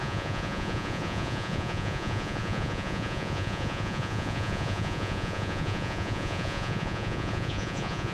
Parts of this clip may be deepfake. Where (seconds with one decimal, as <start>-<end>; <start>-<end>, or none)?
0.0-8.1

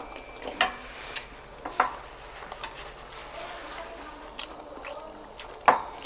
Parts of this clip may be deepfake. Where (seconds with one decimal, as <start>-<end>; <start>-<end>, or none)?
none

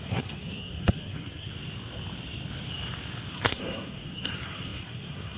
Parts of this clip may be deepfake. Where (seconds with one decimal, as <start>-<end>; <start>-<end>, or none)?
0.0-1.5; 3.3-5.4

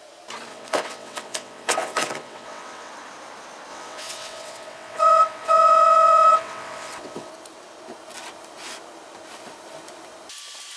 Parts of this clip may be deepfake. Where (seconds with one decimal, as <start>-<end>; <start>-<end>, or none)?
0.5-2.9; 3.7-7.3

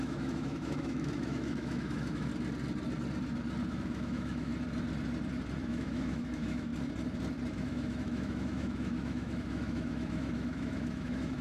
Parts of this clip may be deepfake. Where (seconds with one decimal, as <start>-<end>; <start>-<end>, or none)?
0.0-2.3; 3.7-4.5; 5.6-6.7; 7.5-11.4

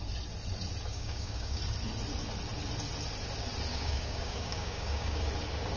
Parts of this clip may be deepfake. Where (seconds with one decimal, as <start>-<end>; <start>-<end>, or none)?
0.9-1.6; 3.7-5.2